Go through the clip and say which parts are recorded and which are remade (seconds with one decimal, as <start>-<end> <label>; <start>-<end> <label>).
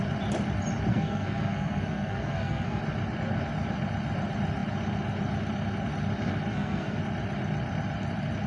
0.0-0.9 recorded; 0.9-2.8 remade; 2.8-6.5 recorded; 6.5-7.0 remade; 7.0-8.5 recorded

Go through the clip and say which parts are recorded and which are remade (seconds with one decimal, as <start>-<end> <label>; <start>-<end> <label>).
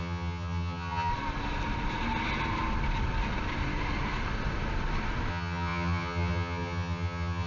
0.0-1.1 remade; 1.1-5.3 recorded; 5.3-7.5 remade